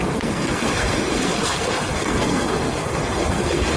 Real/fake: fake